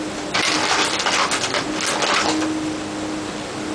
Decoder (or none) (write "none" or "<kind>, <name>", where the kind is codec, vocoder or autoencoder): none